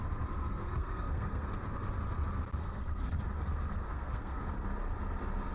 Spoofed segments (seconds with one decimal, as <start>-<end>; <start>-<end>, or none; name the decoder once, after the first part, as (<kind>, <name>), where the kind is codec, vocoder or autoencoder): 0.4-1.5 (codec, SNAC); 2.6-3.2; 3.8-4.4